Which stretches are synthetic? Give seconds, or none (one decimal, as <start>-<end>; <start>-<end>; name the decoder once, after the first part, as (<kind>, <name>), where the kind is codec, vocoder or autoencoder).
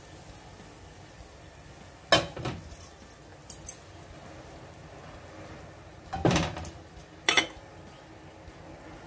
5.9-7.4 (vocoder, BigVGAN v2)